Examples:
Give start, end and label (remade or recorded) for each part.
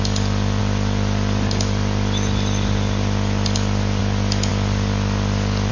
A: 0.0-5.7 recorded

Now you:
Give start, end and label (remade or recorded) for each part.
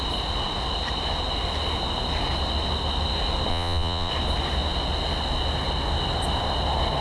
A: 0.0-3.5 recorded; 3.5-4.1 remade; 4.1-7.0 recorded